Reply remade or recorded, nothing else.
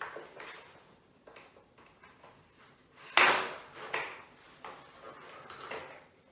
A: recorded